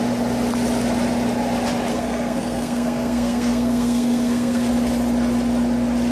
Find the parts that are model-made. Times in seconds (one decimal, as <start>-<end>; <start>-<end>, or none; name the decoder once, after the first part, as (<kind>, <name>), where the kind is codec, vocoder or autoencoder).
1.9-4.7 (codec, SNAC)